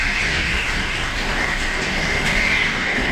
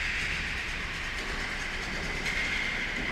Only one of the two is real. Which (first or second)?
second